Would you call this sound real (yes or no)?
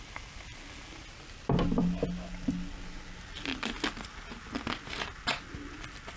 yes